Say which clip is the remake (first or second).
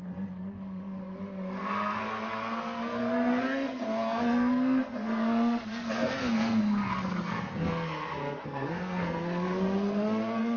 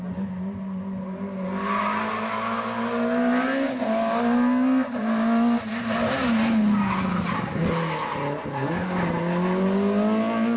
first